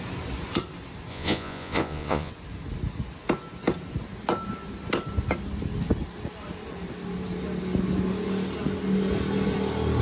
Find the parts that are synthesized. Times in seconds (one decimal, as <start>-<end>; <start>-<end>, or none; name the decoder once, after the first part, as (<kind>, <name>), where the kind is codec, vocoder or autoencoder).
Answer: 1.1-2.3 (vocoder, Vocos)